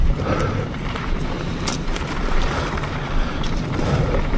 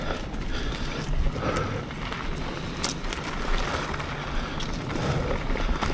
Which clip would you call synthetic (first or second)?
first